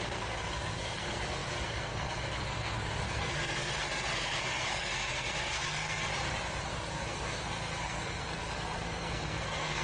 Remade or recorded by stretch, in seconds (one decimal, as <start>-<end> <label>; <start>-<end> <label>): 0.0-6.1 remade; 6.1-6.6 recorded; 6.6-9.8 remade